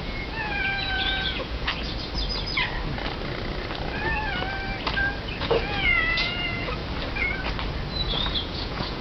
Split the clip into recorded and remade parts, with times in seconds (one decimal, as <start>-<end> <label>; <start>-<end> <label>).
0.0-1.7 remade; 1.7-5.4 recorded; 5.4-6.8 remade; 6.8-8.0 recorded; 8.0-9.0 remade

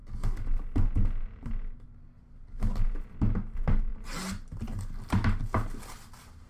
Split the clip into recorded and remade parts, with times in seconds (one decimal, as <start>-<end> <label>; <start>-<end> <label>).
0.0-6.5 recorded

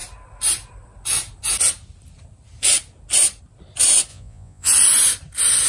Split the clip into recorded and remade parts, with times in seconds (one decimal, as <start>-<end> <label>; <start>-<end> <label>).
0.0-4.1 recorded; 4.1-4.7 remade; 4.7-5.7 recorded

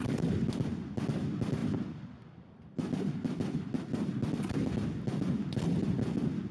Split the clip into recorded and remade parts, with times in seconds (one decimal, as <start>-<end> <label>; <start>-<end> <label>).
0.0-6.5 recorded

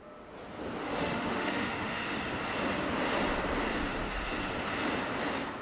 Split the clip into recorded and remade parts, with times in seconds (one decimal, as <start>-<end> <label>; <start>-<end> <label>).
0.0-0.8 recorded; 0.8-2.2 remade; 2.2-5.6 recorded